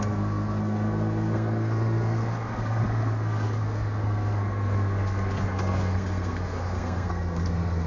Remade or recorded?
remade